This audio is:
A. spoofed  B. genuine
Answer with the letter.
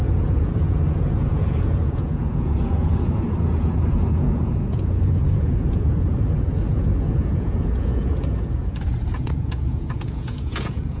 A